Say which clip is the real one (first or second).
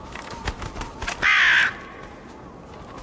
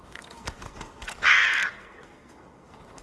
first